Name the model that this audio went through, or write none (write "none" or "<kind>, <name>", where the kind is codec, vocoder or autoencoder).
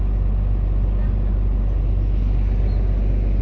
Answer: none